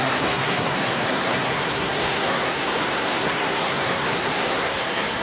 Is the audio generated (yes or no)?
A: yes